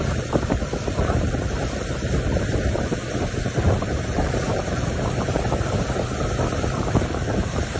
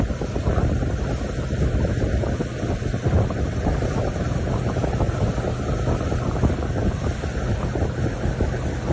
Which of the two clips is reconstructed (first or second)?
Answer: first